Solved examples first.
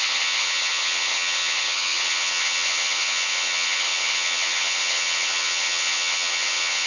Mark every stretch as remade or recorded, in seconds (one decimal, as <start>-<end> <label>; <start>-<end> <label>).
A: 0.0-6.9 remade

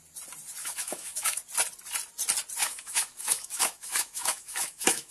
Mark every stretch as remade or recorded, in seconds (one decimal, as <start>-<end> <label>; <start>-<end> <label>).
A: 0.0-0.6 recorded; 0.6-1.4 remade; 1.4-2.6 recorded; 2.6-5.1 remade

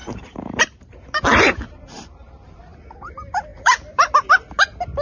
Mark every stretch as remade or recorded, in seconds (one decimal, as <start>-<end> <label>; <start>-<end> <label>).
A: 0.0-2.7 remade; 2.7-3.5 recorded; 3.5-4.1 remade; 4.1-5.0 recorded

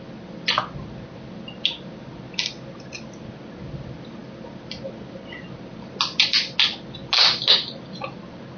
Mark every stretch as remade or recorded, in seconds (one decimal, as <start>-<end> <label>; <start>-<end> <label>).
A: 0.0-8.6 recorded

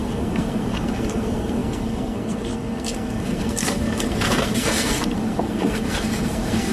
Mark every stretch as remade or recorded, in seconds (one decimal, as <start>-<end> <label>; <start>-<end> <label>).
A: 0.0-6.7 remade

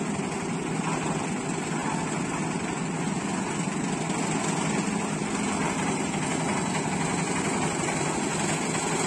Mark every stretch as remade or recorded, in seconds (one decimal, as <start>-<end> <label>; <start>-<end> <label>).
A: 0.0-9.1 recorded